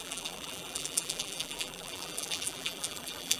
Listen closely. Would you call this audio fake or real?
fake